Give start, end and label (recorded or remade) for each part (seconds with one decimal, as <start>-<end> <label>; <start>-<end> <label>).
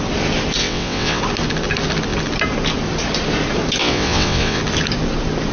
0.0-0.6 recorded; 0.6-1.2 remade; 1.2-3.8 recorded; 3.8-4.6 remade; 4.6-5.5 recorded